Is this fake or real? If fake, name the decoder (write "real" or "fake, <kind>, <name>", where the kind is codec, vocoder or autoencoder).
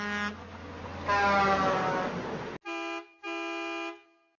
real